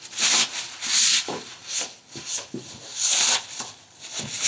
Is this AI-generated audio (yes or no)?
no